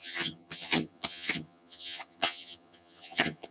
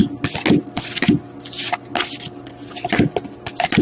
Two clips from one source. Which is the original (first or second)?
second